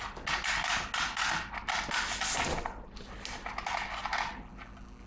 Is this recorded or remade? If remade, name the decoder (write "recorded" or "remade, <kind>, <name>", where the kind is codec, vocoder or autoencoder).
recorded